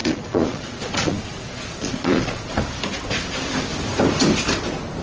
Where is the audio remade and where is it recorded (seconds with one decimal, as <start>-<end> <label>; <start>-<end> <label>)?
0.0-2.6 remade; 2.6-5.0 recorded